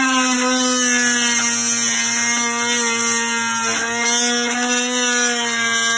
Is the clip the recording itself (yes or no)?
yes